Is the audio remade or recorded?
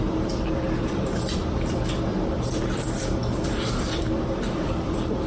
remade